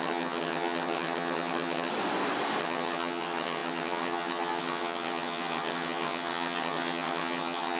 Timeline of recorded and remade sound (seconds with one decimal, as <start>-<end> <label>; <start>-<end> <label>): 0.0-1.9 remade; 1.9-2.6 recorded; 2.6-7.8 remade